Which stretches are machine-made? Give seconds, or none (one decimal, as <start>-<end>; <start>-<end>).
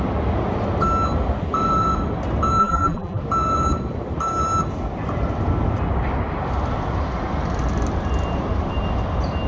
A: 2.6-3.2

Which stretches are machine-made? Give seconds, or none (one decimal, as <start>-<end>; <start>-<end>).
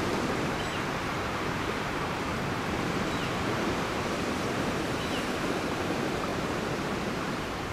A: 0.0-7.7